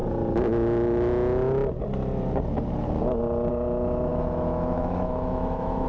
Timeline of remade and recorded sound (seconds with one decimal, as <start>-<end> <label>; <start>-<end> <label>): 0.0-3.5 recorded; 3.5-5.9 remade